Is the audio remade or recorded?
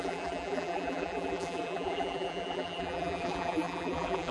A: remade